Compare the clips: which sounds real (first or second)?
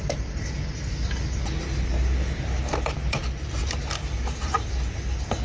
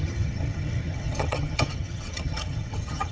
first